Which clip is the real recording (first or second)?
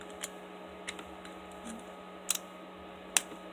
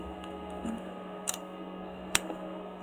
first